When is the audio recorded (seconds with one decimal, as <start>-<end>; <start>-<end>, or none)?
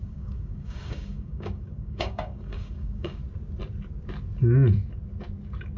3.2-5.8